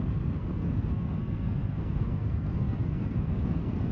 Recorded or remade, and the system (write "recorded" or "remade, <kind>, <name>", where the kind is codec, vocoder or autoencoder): remade, codec, SNAC